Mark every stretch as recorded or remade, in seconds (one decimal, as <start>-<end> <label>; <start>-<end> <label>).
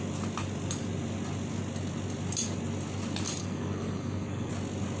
0.0-3.4 recorded; 3.4-4.5 remade; 4.5-5.0 recorded